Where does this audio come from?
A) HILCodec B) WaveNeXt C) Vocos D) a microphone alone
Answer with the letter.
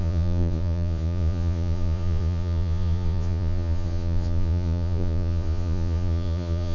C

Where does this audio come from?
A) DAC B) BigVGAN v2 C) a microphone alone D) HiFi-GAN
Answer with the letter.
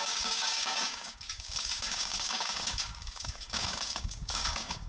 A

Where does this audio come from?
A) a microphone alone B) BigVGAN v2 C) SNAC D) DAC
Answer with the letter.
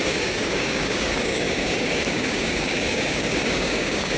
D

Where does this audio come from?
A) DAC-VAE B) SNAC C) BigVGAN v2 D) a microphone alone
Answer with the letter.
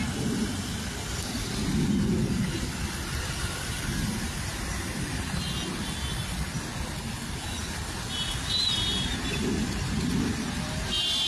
D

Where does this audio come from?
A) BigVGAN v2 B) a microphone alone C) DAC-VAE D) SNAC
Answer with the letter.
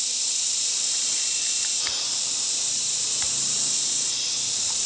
A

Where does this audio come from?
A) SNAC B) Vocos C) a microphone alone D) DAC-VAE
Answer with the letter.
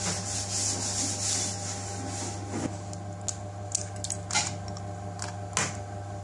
C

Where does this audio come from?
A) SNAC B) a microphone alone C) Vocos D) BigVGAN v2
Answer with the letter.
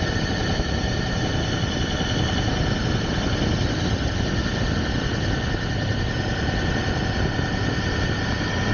B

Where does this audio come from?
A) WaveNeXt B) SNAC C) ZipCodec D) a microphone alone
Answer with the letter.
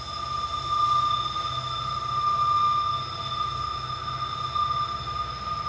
D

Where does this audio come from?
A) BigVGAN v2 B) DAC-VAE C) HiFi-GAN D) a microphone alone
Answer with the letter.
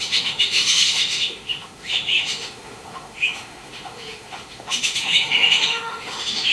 B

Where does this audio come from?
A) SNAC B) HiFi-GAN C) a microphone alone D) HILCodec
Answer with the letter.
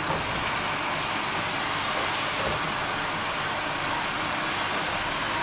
C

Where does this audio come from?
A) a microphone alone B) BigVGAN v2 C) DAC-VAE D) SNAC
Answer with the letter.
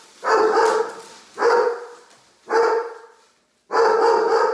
A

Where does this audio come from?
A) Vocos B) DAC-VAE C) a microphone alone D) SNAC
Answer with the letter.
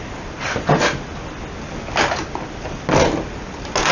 C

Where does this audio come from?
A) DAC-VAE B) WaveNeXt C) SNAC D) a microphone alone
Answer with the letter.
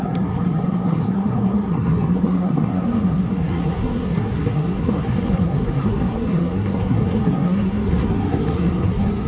C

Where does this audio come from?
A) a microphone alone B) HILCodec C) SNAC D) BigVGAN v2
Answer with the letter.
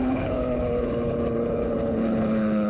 B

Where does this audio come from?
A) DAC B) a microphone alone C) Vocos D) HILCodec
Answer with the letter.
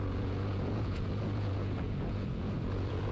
C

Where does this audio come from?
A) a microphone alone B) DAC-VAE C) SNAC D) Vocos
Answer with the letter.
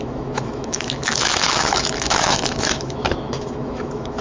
B